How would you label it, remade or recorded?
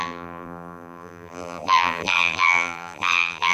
remade